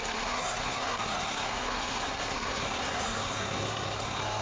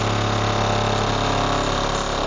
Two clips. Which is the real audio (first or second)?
second